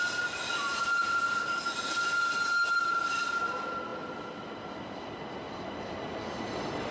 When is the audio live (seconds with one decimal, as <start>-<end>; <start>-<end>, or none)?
0.0-6.9